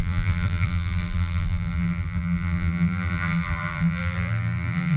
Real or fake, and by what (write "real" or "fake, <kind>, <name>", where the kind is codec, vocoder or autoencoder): fake, vocoder, BigVGAN v2